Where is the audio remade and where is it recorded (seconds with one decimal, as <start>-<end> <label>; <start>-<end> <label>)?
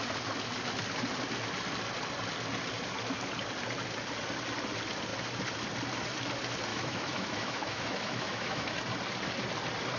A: 0.0-6.7 recorded; 6.7-8.8 remade; 8.8-10.0 recorded